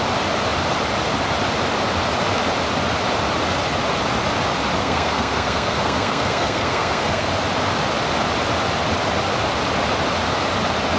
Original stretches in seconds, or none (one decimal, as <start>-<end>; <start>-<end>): 0.0-4.8; 7.3-11.0